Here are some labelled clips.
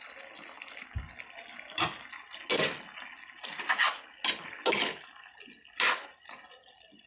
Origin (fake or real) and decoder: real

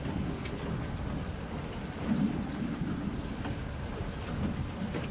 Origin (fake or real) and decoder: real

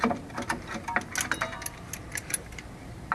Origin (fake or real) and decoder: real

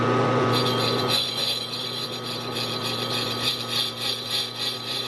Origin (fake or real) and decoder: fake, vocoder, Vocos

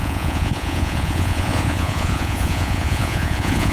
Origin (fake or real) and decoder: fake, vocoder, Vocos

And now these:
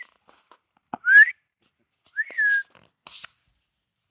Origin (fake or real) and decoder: real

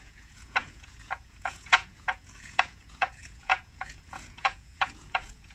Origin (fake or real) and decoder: fake, vocoder, Vocos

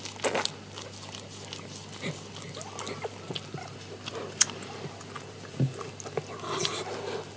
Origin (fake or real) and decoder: real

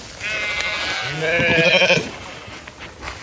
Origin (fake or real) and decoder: real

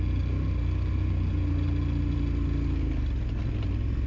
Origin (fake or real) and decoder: real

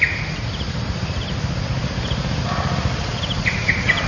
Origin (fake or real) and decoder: real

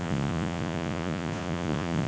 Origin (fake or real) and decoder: fake, vocoder, Vocos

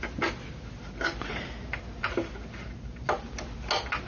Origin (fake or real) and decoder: real